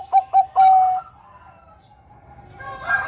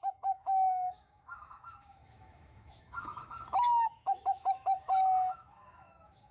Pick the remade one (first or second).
second